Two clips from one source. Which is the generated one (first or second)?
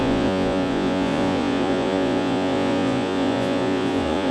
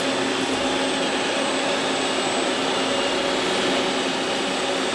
first